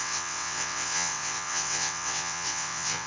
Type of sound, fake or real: fake